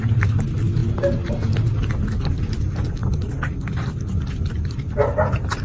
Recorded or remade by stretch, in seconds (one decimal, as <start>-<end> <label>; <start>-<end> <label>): 0.0-5.6 recorded